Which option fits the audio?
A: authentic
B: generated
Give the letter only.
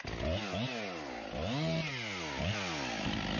A